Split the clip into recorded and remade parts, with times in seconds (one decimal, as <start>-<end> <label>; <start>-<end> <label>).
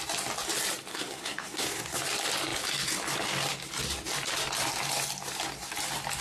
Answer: 0.0-0.9 recorded; 0.9-2.0 remade; 2.0-6.2 recorded